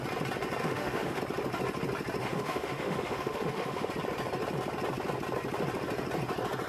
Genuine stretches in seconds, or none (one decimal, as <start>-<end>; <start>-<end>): 0.0-0.6; 1.2-2.2; 3.9-6.7